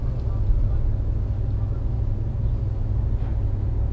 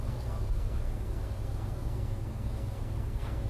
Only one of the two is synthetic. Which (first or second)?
second